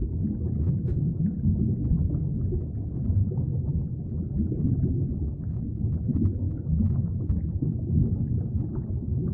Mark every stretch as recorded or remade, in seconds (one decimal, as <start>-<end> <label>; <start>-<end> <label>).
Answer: 0.0-3.2 recorded; 3.2-4.0 remade; 4.0-9.3 recorded

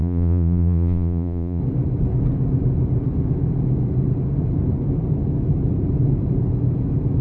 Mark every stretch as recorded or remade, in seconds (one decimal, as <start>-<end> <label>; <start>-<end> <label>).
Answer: 0.0-1.6 remade; 1.6-7.2 recorded